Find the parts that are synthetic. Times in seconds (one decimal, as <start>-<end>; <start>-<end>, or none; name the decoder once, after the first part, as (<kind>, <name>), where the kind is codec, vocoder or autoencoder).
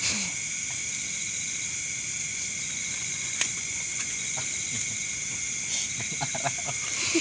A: 2.3-4.5 (vocoder, Vocos)